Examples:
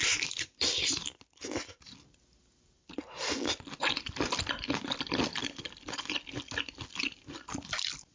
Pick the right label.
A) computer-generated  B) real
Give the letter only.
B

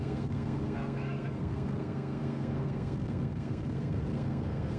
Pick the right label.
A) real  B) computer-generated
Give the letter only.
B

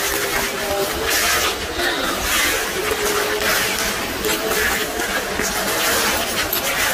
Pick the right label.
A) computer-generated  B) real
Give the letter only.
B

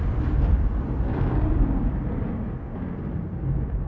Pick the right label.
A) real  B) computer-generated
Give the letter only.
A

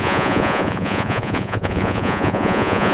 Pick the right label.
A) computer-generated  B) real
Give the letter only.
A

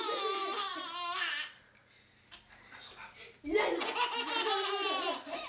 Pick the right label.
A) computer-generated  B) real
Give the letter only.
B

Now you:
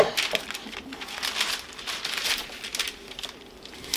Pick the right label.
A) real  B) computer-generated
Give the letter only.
B